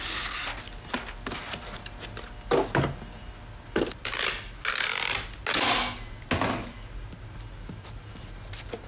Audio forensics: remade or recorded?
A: recorded